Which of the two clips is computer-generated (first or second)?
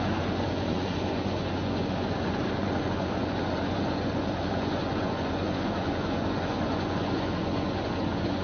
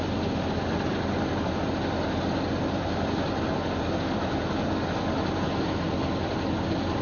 first